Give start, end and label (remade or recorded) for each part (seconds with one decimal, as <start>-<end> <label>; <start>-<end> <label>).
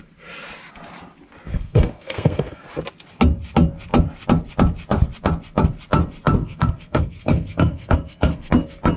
0.0-1.5 recorded; 1.5-2.6 remade; 2.6-6.4 recorded; 6.4-8.5 remade; 8.5-9.0 recorded